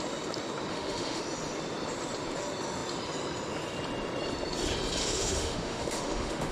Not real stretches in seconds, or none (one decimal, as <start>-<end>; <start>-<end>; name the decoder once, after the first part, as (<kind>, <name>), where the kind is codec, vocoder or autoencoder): 0.7-1.2 (autoencoder, DAC-VAE); 5.0-6.5

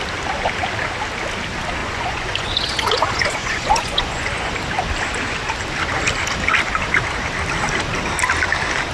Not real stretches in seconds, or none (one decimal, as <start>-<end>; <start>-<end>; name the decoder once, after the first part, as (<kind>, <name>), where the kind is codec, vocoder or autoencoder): 1.8-4.5 (vocoder, Vocos)

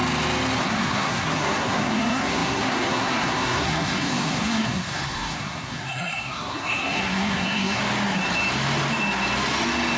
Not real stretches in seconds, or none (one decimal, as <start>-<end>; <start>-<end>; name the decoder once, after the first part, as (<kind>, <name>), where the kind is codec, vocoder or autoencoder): 0.6-7.8 (codec, SNAC)